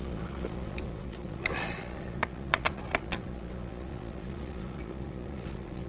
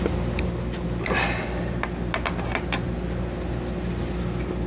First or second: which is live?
second